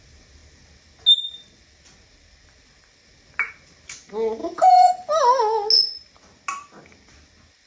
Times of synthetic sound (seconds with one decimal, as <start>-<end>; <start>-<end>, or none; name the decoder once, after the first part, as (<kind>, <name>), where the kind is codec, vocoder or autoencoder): 4.4-4.9 (vocoder, Vocos)